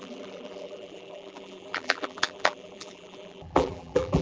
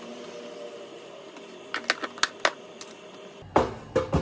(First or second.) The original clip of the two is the second